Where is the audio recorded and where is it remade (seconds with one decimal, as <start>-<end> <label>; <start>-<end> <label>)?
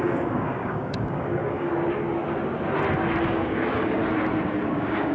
0.0-1.7 remade; 1.7-3.2 recorded; 3.2-4.0 remade; 4.0-4.5 recorded; 4.5-5.1 remade